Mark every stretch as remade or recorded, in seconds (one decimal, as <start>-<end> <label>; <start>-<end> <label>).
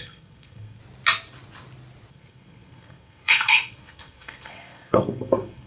0.0-0.8 remade; 0.8-2.1 recorded; 2.1-5.7 remade